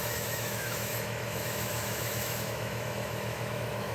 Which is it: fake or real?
fake